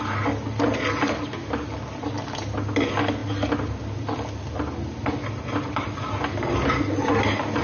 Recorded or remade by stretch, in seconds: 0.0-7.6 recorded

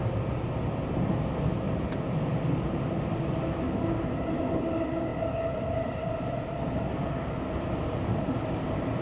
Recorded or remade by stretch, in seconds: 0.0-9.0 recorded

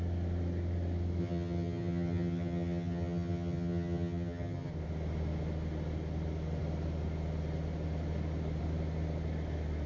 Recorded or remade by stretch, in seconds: 0.0-1.2 recorded; 1.2-4.7 remade; 4.7-9.9 recorded